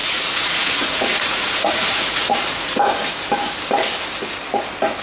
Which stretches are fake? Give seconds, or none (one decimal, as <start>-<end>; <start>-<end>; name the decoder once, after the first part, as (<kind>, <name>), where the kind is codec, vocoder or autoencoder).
0.0-2.8 (vocoder, Vocos)